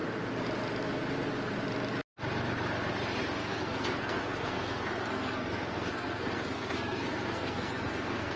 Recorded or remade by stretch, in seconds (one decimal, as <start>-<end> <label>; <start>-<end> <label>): 0.0-3.4 recorded; 3.4-8.4 remade